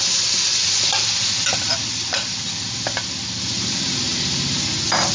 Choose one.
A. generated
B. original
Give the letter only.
B